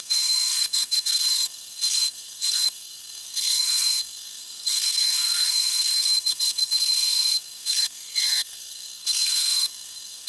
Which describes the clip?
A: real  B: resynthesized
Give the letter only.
B